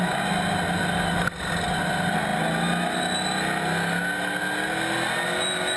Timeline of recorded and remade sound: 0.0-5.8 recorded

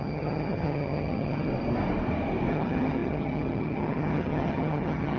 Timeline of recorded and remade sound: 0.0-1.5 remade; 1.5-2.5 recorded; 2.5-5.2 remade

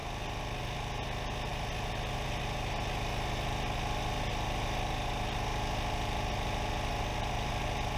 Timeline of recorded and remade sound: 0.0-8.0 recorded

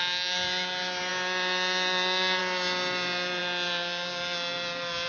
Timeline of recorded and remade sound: 0.0-5.1 recorded

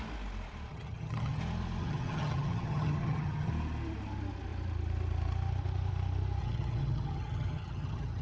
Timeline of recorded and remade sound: 0.0-0.7 recorded; 0.7-1.4 remade; 1.4-1.8 recorded; 1.8-3.5 remade; 3.5-6.4 recorded; 6.4-8.2 remade